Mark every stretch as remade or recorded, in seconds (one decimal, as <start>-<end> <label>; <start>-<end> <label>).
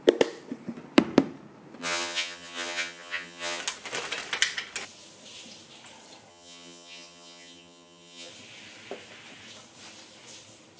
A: 0.0-1.8 recorded; 1.8-3.6 remade; 3.6-6.3 recorded; 6.3-8.3 remade; 8.3-10.8 recorded